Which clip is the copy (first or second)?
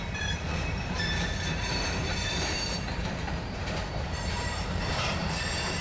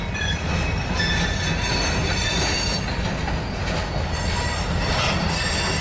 first